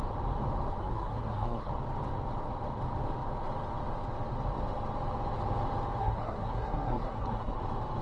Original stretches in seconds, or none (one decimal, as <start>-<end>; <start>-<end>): 0.0-0.8; 1.7-6.0; 7.6-8.0